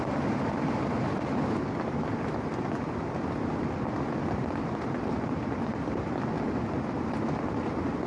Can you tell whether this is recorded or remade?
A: recorded